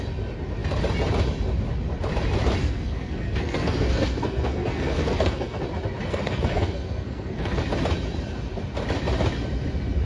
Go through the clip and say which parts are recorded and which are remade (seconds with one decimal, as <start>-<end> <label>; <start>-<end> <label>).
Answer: 0.0-2.6 recorded; 2.6-5.6 remade; 5.6-6.1 recorded; 6.1-7.6 remade; 7.6-10.1 recorded